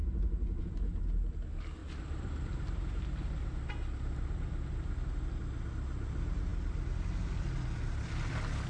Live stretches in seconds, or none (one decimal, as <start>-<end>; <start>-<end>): 0.0-1.8; 3.7-8.7

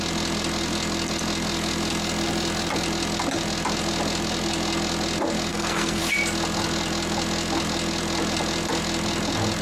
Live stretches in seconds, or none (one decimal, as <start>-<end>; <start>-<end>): 0.0-5.5; 6.0-9.6

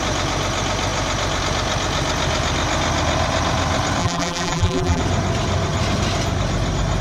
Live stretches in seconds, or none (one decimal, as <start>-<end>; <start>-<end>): 0.0-4.0; 5.0-7.0